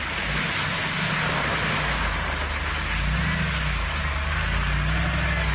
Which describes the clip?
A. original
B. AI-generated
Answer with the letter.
A